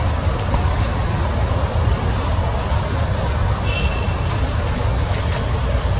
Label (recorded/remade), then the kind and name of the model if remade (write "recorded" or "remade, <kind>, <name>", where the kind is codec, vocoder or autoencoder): recorded